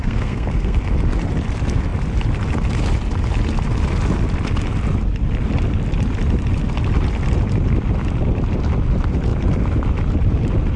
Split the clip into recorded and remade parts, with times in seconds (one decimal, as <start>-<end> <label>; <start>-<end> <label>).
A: 0.0-0.8 remade; 0.8-10.8 recorded